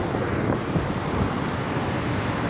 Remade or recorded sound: recorded